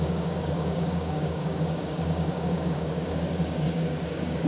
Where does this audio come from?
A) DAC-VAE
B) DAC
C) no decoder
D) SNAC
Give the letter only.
B